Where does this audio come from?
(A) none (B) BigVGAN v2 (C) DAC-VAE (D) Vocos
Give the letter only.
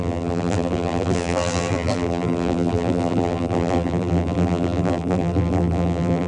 B